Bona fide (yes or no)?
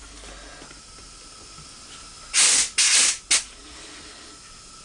yes